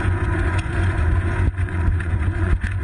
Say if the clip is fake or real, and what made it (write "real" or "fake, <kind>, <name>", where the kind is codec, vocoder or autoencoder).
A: fake, vocoder, Vocos